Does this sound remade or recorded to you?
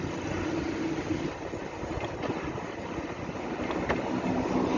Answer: recorded